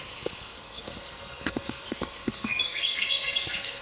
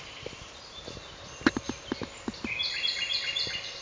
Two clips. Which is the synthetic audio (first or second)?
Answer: first